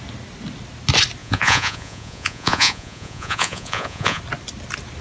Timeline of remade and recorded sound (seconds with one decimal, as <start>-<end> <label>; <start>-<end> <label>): 0.0-1.2 recorded; 1.2-4.2 remade; 4.2-5.0 recorded